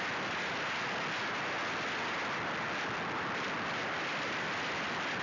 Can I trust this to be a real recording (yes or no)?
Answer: yes